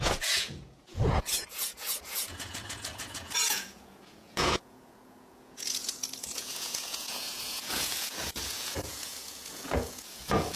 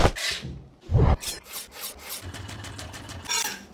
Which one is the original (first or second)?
second